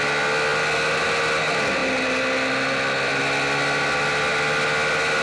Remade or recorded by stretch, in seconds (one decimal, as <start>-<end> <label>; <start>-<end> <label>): 0.0-5.2 recorded